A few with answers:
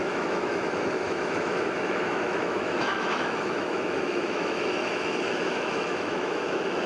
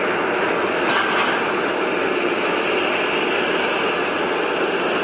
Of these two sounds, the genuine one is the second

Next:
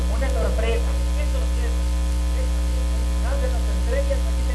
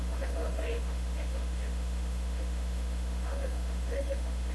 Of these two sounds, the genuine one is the first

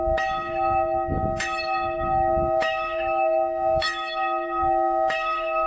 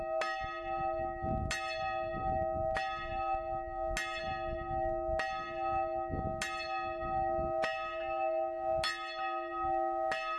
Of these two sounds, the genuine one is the second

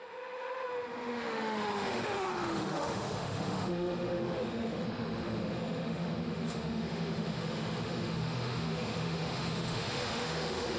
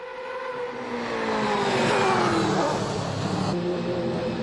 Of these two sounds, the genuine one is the second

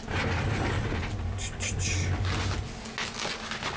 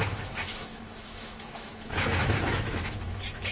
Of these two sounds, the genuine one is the first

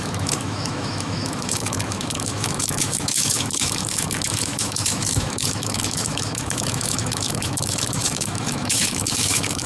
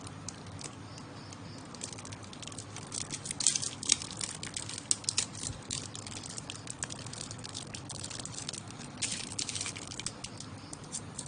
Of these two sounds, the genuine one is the second